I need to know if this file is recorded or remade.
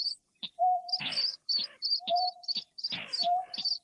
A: remade